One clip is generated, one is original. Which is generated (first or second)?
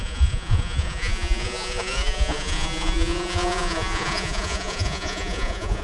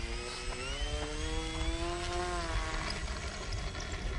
first